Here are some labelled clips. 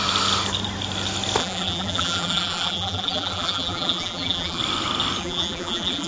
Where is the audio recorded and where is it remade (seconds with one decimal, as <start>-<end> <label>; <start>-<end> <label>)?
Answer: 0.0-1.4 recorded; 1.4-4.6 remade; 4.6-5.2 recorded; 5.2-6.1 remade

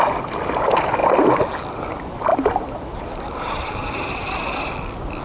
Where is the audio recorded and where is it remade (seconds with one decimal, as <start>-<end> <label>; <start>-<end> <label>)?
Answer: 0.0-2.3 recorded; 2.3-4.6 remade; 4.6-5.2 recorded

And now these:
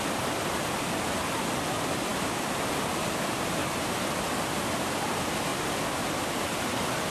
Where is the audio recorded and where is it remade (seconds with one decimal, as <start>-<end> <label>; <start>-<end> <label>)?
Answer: 0.0-3.6 remade; 3.6-5.0 recorded; 5.0-5.5 remade; 5.5-6.4 recorded; 6.4-7.1 remade